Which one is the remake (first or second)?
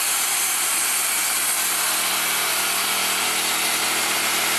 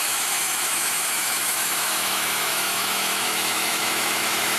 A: second